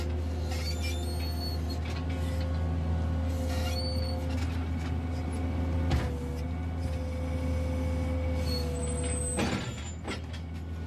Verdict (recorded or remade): recorded